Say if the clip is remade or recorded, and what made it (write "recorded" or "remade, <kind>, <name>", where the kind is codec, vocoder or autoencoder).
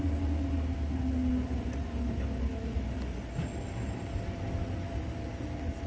recorded